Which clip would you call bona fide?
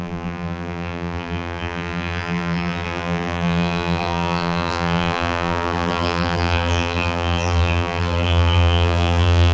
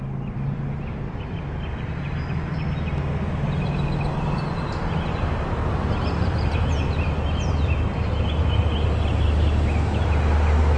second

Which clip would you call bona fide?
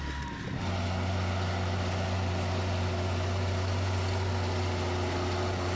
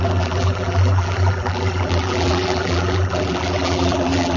first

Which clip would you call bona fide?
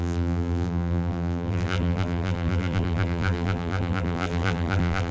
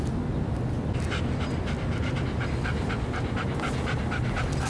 second